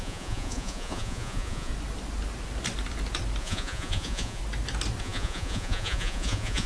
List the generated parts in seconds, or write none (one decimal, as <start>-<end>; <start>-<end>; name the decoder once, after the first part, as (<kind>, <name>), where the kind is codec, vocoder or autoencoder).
0.0-1.7 (vocoder, Vocos); 3.4-4.4; 5.0-6.7

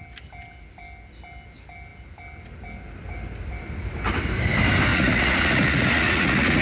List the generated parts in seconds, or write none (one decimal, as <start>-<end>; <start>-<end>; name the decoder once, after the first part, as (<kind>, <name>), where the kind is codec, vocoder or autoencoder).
4.9-6.6 (vocoder, Vocos)

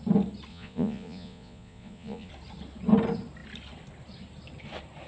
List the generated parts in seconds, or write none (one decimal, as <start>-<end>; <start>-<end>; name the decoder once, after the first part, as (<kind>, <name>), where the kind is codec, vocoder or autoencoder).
0.5-2.3 (vocoder, Vocos)

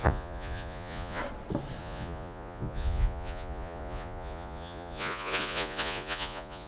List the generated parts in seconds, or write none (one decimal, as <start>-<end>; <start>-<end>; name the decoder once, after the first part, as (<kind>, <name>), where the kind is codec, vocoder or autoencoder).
0.0-1.2 (vocoder, Vocos); 1.8-6.7

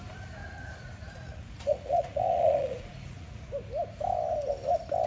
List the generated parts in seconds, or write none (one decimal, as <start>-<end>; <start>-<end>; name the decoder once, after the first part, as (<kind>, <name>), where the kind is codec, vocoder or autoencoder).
0.4-3.5 (vocoder, Vocos)

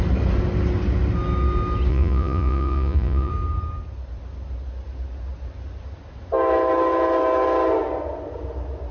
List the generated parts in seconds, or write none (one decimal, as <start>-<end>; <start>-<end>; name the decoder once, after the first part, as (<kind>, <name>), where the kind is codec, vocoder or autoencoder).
1.9-3.3 (vocoder, Vocos)

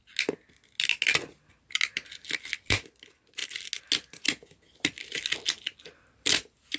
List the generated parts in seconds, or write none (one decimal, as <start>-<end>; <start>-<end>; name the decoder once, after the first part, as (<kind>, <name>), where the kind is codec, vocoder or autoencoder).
none